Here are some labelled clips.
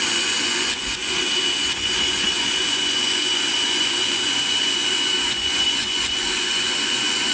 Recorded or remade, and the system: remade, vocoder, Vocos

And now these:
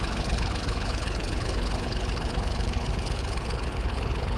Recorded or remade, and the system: remade, codec, HILCodec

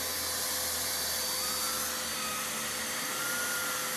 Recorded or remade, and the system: recorded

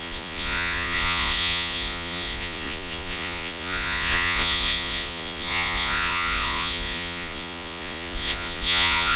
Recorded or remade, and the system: remade, vocoder, Vocos